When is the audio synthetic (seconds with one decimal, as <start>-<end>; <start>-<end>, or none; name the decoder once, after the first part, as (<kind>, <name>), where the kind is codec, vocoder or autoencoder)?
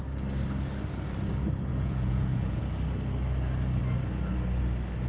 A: 1.7-2.6 (vocoder, Vocos)